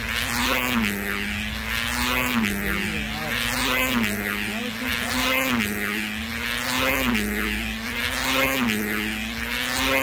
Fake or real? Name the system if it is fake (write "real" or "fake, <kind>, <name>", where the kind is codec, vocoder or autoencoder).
real